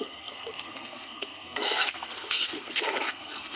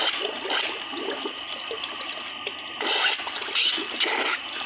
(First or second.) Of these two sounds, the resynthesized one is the first